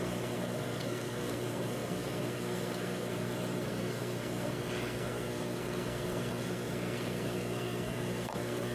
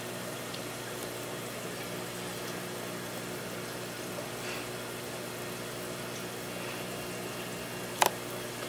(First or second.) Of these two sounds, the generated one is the first